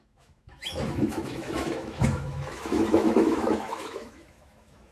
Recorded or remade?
remade